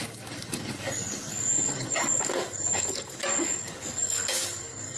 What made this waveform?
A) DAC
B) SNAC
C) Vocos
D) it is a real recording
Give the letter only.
A